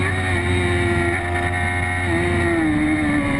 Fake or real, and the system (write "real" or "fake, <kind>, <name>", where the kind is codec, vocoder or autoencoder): real